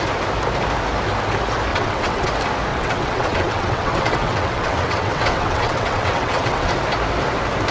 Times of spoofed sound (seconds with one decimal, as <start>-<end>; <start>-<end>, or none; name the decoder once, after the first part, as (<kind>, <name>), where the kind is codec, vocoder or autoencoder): 1.7-2.3 (vocoder, WaveNeXt); 2.7-6.7